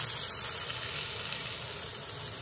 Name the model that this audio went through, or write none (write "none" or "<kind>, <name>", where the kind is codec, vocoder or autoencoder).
none